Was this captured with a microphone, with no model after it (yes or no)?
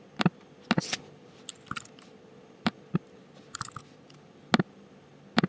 yes